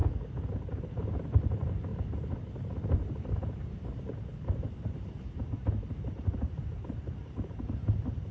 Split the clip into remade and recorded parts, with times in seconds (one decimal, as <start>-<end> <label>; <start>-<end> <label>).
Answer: 0.0-0.9 recorded; 0.9-1.9 remade; 1.9-3.0 recorded; 3.0-8.3 remade